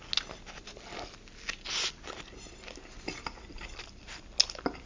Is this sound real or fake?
real